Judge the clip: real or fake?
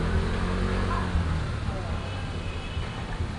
real